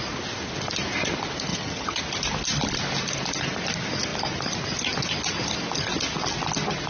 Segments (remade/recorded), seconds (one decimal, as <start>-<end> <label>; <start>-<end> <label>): 0.0-1.5 recorded; 1.5-2.0 remade; 2.0-6.9 recorded